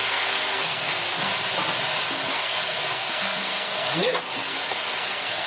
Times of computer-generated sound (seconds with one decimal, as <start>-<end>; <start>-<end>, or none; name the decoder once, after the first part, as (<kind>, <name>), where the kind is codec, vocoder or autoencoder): 0.0-1.3 (codec, SNAC); 2.3-5.5